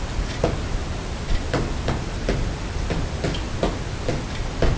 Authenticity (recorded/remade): recorded